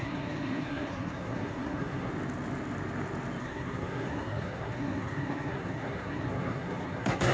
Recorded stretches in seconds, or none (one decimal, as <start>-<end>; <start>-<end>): 2.1-3.4